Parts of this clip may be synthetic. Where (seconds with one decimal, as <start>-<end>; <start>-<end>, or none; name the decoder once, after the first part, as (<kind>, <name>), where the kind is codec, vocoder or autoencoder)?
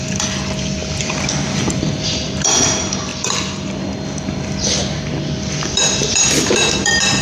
0.0-0.8 (vocoder, BigVGAN v2); 1.4-7.2